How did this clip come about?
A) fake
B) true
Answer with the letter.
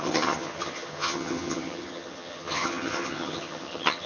A